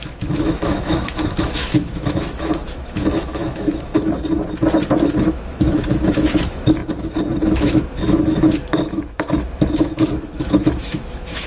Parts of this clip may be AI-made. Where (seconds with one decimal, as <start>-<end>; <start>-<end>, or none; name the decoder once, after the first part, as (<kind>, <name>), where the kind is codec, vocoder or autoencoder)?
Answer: 0.0-3.9 (autoencoder, DAC-VAE); 5.3-6.8; 7.5-11.5